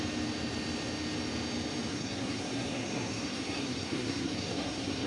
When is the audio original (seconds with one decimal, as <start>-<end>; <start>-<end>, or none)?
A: 0.0-1.9